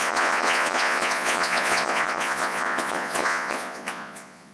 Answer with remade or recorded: remade